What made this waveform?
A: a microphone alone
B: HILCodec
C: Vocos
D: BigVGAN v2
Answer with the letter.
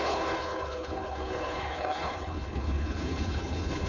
B